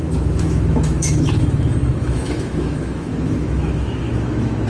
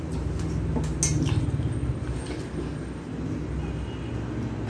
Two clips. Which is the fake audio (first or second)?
first